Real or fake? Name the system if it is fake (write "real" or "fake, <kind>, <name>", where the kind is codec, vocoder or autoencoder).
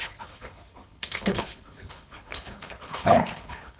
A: fake, codec, HILCodec